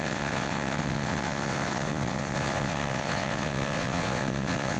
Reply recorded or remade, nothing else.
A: remade